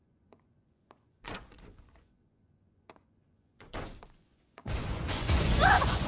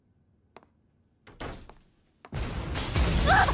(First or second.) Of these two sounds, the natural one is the second